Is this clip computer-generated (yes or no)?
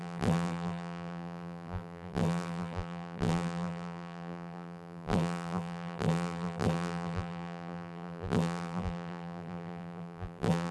yes